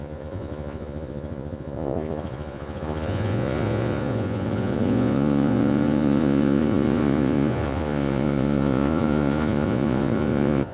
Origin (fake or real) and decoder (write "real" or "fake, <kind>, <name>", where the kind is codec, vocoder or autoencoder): fake, vocoder, Vocos